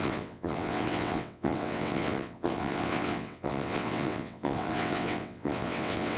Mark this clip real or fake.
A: fake